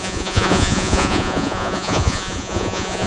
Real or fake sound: fake